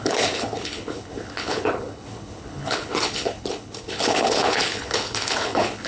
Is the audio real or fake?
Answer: fake